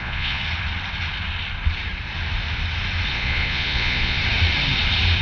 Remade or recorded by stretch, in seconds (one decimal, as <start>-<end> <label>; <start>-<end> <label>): 0.0-0.4 remade; 0.4-3.1 recorded; 3.1-4.2 remade; 4.2-5.2 recorded